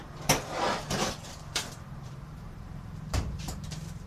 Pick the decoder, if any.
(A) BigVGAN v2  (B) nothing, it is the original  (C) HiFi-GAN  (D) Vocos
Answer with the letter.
A